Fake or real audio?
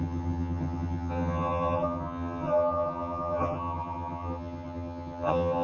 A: fake